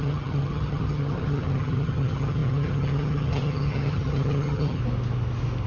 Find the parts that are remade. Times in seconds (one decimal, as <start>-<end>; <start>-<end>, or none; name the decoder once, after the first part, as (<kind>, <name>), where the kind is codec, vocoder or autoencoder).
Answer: 0.0-4.8 (vocoder, HiFi-GAN)

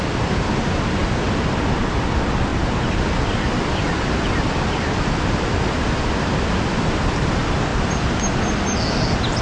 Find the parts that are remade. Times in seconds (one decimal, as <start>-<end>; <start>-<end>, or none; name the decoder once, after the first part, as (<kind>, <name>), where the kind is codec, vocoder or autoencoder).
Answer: 2.5-6.8 (vocoder, BigVGAN v2); 7.7-8.3

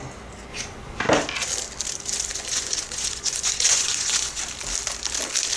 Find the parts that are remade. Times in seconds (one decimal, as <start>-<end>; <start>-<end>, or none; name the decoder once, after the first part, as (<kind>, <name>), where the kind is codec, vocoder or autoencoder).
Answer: 0.5-1.0 (vocoder, Vocos); 2.3-4.4

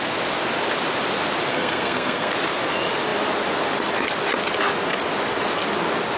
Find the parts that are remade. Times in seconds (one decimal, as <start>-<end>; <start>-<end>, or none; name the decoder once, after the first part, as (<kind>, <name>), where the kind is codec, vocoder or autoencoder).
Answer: 1.5-2.3 (codec, SNAC)

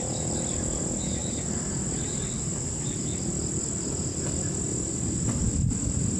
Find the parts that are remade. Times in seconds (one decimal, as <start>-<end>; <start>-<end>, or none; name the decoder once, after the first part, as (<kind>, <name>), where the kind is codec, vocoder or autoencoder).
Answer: none

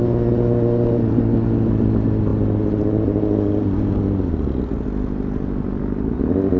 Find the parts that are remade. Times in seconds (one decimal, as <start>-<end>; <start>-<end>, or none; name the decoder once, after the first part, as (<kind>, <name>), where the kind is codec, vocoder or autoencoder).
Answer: none

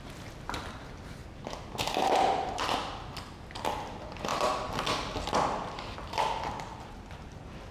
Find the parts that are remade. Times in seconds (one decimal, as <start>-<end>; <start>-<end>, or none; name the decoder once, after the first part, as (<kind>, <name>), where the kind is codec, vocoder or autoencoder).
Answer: none

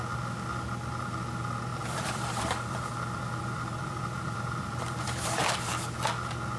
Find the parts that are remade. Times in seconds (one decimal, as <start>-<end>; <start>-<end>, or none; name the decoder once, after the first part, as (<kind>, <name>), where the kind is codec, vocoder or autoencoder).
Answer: 1.7-5.7 (vocoder, BigVGAN v2)